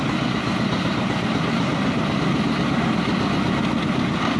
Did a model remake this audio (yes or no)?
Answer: no